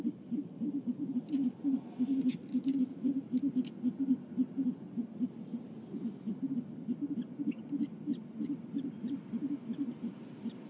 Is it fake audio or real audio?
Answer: real